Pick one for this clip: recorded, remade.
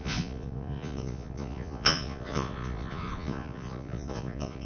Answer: remade